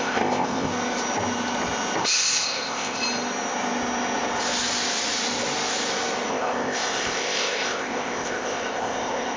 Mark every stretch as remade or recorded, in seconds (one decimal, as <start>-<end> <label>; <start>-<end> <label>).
0.0-0.7 remade; 0.7-2.0 recorded; 2.0-3.0 remade; 3.0-6.3 recorded; 6.3-9.4 remade